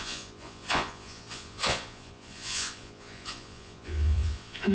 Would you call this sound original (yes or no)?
no